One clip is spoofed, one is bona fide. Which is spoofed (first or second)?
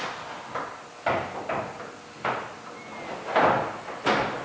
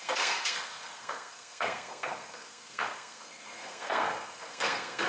second